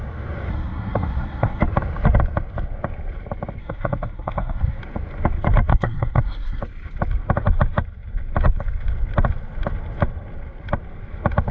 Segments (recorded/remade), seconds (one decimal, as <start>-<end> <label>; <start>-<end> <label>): 0.0-0.5 recorded; 0.5-1.6 remade; 1.6-3.6 recorded; 3.6-4.8 remade; 4.8-5.7 recorded; 5.7-6.6 remade; 6.6-11.5 recorded